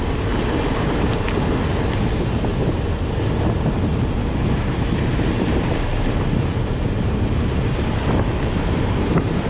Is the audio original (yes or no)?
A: no